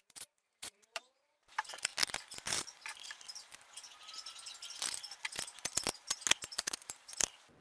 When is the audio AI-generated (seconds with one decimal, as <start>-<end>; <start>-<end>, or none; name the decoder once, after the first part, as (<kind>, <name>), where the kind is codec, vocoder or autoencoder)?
0.0-1.9 (vocoder, BigVGAN v2); 6.5-7.6